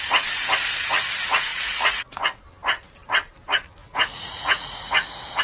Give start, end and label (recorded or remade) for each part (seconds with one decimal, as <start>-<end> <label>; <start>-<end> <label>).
0.0-1.5 recorded; 1.5-2.2 remade; 2.2-3.8 recorded; 3.8-5.4 remade